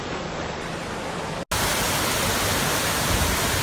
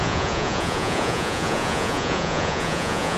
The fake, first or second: second